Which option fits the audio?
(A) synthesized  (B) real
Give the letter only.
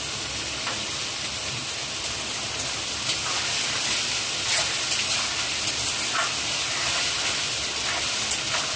B